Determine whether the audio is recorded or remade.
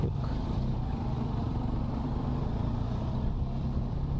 remade